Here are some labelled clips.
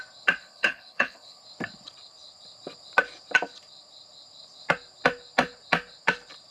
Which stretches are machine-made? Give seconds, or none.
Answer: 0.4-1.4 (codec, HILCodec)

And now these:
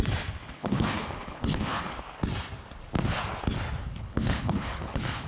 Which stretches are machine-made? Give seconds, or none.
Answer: 0.4-2.0 (codec, HILCodec); 3.8-5.3